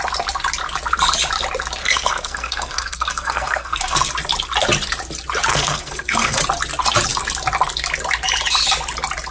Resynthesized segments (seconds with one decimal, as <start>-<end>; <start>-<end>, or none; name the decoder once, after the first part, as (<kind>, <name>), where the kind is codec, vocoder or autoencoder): 1.8-4.1 (codec, SNAC); 5.5-6.4